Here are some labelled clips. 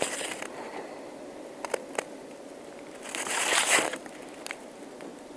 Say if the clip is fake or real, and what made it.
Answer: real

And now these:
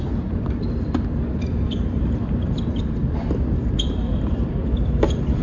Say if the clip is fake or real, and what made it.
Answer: fake, vocoder, BigVGAN v2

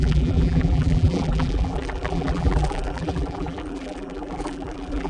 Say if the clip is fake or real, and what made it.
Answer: fake, vocoder, BigVGAN v2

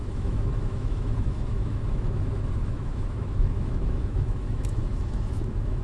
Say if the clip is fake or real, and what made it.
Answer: fake, autoencoder, DAC-VAE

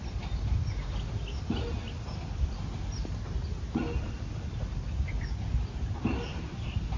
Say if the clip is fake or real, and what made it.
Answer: real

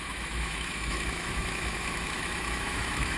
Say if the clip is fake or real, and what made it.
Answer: fake, autoencoder, DAC-VAE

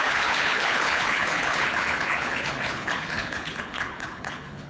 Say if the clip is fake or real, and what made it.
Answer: fake, codec, HILCodec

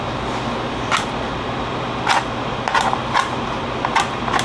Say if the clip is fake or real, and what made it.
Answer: real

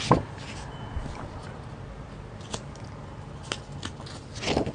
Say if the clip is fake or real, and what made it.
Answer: real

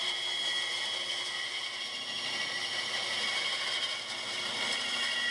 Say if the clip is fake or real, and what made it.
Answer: real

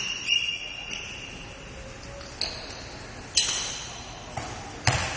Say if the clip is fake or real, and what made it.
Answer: real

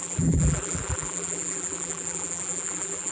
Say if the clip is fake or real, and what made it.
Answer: fake, vocoder, BigVGAN v2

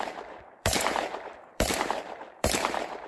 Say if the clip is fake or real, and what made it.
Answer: fake, vocoder, BigVGAN v2